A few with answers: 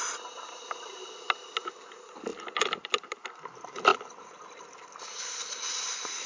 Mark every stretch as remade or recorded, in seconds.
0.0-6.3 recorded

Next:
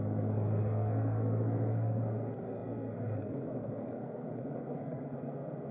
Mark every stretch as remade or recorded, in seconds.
0.0-5.7 remade